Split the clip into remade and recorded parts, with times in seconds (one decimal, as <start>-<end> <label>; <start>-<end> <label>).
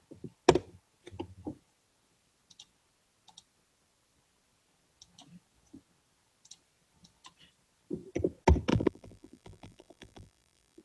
0.0-8.7 recorded; 8.7-10.8 remade